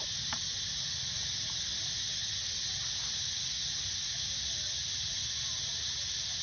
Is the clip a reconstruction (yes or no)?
no